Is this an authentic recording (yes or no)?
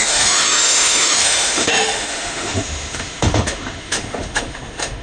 no